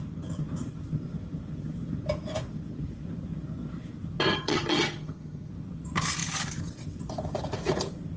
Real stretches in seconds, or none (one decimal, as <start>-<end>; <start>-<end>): 0.0-4.3; 5.5-8.2